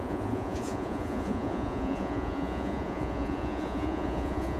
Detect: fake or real fake